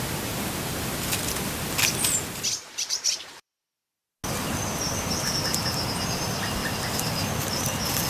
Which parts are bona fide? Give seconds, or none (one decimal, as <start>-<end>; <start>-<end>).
0.0-6.6; 7.3-8.1